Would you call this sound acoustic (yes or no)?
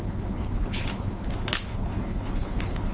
no